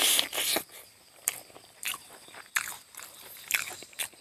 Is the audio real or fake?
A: fake